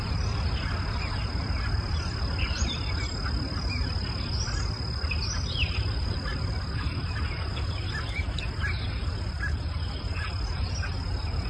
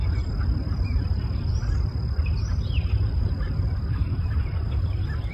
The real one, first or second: first